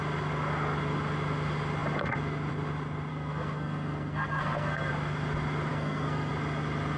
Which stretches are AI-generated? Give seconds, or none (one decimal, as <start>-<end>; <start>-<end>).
3.1-4.9; 5.7-6.3